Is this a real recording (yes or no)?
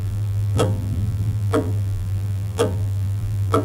no